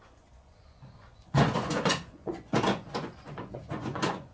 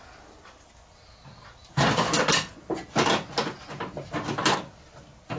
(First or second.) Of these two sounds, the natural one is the second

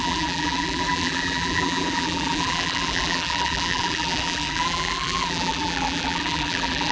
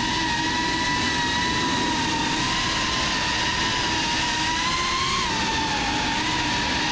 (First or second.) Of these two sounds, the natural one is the second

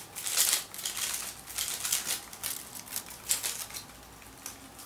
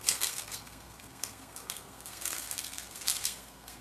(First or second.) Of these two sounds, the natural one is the first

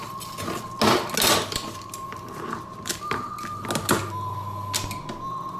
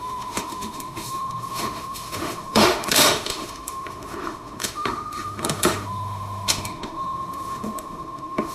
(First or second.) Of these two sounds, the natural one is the first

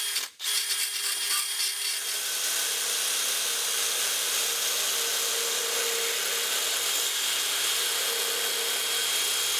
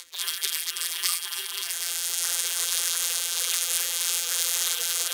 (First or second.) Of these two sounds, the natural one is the first